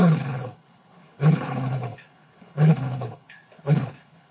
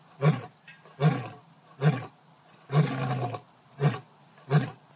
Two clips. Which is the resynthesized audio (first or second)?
first